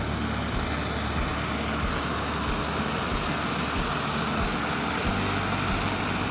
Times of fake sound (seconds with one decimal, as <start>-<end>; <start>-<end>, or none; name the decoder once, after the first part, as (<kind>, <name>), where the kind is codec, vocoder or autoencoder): none

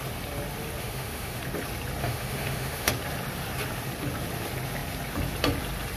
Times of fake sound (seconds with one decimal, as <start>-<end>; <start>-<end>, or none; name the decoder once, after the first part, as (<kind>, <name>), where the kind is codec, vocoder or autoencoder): 0.8-1.4 (autoencoder, DAC-VAE); 2.0-2.9